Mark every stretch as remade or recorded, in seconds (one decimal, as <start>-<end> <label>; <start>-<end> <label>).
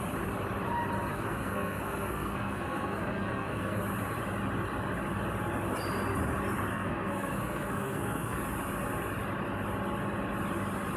0.0-1.1 recorded; 1.1-3.8 remade; 3.8-6.7 recorded; 6.7-8.4 remade; 8.4-11.0 recorded